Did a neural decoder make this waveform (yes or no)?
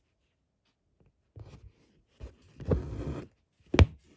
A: no